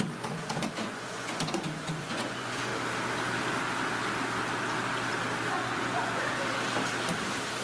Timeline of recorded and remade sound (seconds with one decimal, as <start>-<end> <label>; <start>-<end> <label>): 0.0-2.7 remade; 2.7-5.5 recorded; 5.5-6.4 remade; 6.4-7.6 recorded